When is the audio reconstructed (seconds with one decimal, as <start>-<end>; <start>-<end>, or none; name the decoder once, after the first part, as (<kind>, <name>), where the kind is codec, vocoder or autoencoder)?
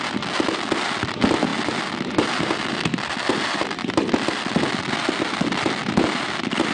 none